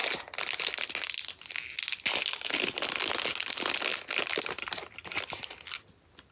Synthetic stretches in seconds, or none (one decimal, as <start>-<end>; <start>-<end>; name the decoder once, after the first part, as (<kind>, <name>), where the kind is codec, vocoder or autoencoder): 3.9-6.3 (vocoder, BigVGAN v2)